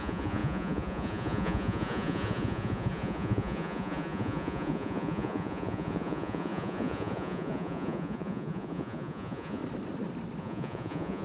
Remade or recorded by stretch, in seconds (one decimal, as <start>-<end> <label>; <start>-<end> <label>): 0.0-9.6 remade; 9.6-10.4 recorded; 10.4-11.2 remade

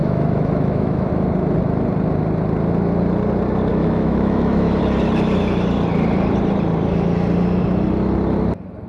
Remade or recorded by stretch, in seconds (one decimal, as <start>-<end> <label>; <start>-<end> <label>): 0.0-1.1 remade; 1.1-3.7 recorded; 3.7-4.8 remade; 4.8-8.9 recorded